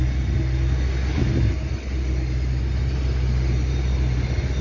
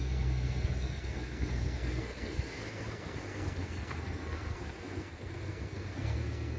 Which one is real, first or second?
first